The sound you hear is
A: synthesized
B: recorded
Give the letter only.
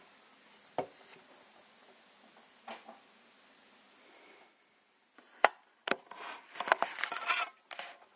B